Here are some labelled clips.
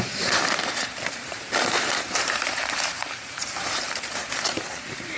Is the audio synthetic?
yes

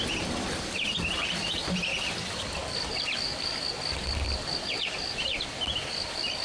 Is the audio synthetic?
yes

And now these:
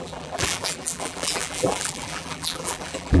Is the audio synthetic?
yes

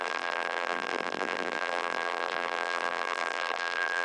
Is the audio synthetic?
yes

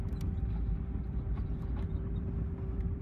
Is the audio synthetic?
yes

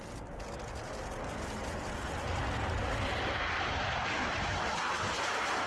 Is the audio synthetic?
no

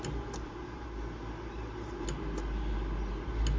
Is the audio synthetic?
no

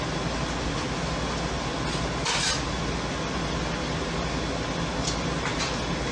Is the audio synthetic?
no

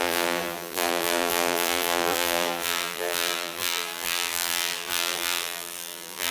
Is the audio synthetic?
yes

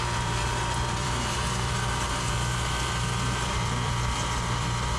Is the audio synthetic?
yes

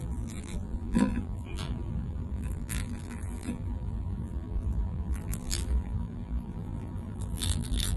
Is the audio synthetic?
yes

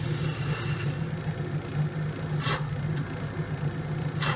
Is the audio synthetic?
no